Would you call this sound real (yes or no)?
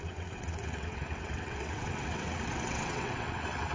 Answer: no